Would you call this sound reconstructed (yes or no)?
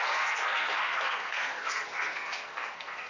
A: yes